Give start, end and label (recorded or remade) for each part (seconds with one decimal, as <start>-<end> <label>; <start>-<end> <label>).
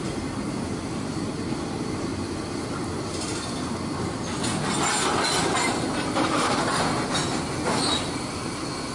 0.0-8.9 recorded